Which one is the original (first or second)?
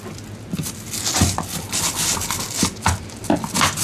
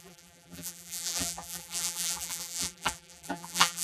first